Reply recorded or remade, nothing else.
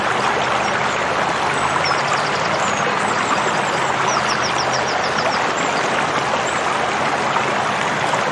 recorded